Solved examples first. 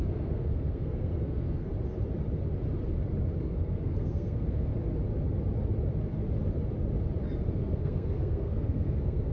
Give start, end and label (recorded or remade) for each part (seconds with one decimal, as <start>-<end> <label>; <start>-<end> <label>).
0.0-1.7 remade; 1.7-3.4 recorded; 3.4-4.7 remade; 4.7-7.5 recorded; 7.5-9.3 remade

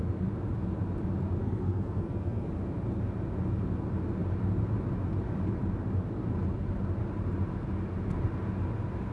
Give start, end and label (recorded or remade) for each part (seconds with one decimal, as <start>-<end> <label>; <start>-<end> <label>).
0.0-1.4 recorded; 1.4-2.5 remade; 2.5-9.1 recorded

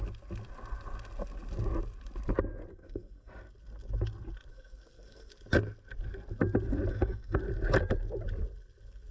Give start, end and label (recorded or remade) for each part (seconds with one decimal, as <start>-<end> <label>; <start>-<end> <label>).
0.0-2.7 recorded; 2.7-3.3 remade; 3.3-4.5 recorded; 4.5-5.3 remade; 5.3-6.9 recorded; 6.9-7.4 remade; 7.4-9.1 recorded

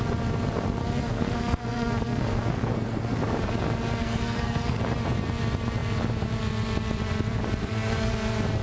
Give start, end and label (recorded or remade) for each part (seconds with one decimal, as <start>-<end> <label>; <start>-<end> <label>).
0.0-0.8 recorded; 0.8-3.2 remade; 3.2-4.0 recorded; 4.0-4.8 remade; 4.8-7.6 recorded; 7.6-8.1 remade; 8.1-8.6 recorded

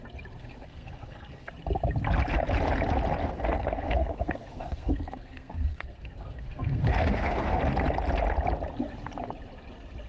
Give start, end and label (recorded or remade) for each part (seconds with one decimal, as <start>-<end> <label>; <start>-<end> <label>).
0.0-0.4 recorded; 0.4-1.5 remade; 1.5-3.2 recorded; 3.2-7.6 remade; 7.6-10.1 recorded

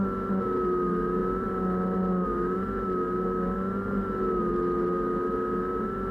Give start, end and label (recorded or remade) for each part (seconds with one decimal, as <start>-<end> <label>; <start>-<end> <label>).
0.0-6.1 recorded

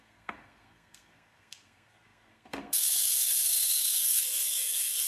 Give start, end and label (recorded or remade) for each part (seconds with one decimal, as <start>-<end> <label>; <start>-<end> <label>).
0.0-5.1 remade

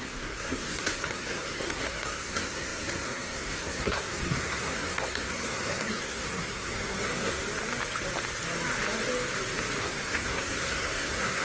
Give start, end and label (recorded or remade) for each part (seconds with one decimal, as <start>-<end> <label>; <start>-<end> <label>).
0.0-7.4 remade; 7.4-9.8 recorded; 9.8-11.4 remade